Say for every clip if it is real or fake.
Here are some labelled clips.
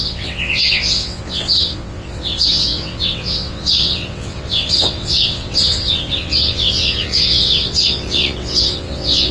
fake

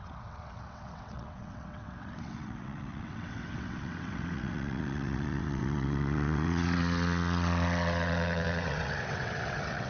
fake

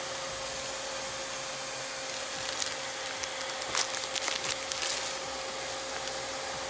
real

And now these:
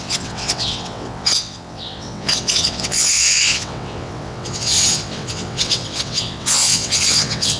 fake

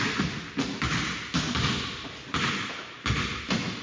real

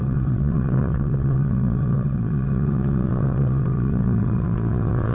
fake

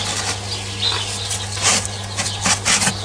real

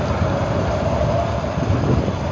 real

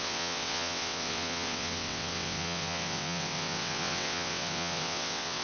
fake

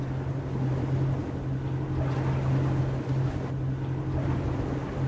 real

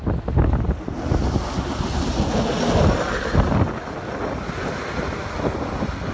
real